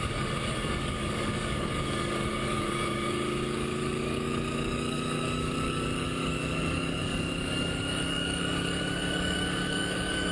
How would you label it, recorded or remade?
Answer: remade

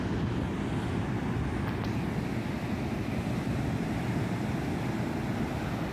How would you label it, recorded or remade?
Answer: recorded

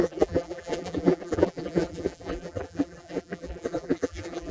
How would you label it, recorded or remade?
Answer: remade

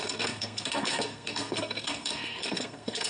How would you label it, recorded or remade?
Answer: remade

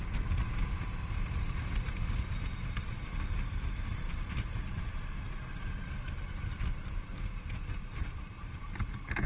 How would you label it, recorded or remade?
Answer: recorded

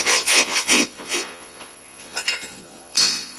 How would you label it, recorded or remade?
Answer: remade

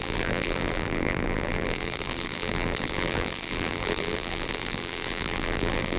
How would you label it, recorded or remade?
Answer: remade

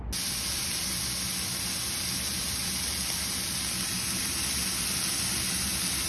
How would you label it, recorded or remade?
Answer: recorded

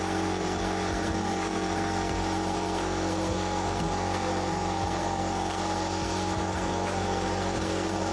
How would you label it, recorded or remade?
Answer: remade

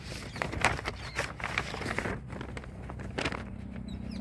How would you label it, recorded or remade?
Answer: recorded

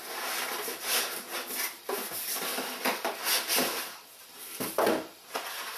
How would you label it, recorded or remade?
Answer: recorded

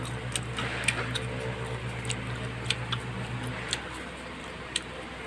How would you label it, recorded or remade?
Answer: recorded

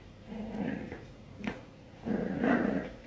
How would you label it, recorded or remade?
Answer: remade